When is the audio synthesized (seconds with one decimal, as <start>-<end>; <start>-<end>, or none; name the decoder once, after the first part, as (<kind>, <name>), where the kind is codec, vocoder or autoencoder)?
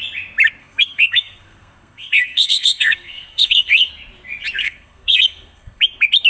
0.6-3.9 (codec, SNAC); 4.6-5.8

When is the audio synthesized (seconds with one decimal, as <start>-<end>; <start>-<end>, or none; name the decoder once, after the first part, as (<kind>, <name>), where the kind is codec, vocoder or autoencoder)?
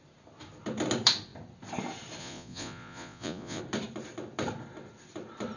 2.2-3.6 (vocoder, Vocos)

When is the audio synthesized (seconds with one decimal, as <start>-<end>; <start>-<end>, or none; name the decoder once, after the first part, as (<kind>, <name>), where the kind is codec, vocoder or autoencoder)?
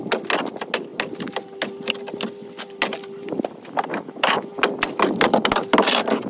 3.9-4.5 (autoencoder, DAC-VAE)